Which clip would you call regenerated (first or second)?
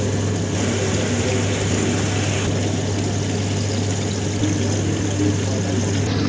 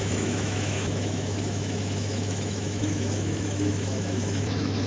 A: second